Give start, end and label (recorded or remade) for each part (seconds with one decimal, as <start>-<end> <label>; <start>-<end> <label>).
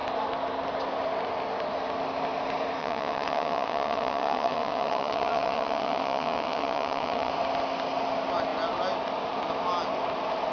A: 0.0-2.8 recorded; 2.8-7.3 remade; 7.3-10.5 recorded